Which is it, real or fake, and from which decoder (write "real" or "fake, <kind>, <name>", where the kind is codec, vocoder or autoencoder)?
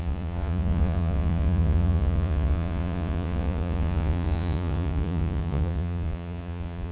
fake, vocoder, Vocos